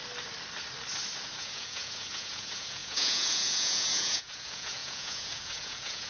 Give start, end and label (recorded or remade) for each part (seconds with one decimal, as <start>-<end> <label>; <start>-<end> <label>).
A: 0.0-1.4 recorded; 1.4-6.1 remade